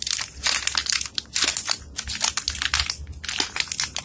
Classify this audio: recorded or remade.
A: recorded